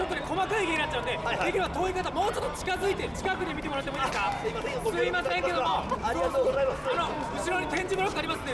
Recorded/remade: recorded